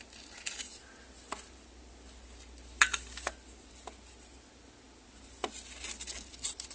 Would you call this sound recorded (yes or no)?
yes